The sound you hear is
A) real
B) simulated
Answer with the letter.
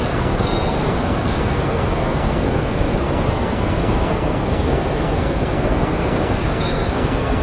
B